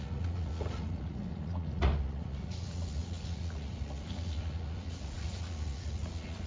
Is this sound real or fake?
fake